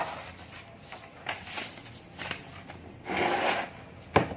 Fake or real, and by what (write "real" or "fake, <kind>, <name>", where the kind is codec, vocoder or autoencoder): real